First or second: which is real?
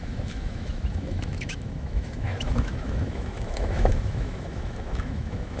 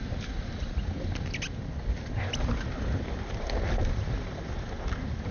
second